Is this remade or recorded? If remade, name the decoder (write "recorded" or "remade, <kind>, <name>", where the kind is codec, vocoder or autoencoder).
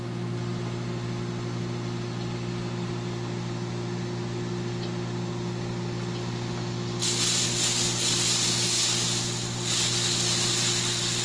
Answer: recorded